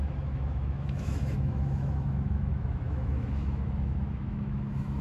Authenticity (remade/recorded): remade